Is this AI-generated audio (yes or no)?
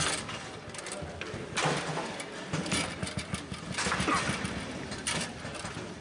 no